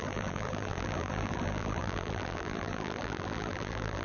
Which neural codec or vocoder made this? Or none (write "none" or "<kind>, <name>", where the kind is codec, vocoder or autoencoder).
vocoder, BigVGAN v2